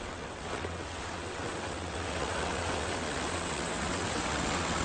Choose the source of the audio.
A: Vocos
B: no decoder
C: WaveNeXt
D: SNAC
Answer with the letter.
C